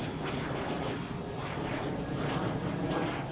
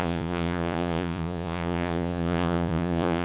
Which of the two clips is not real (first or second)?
second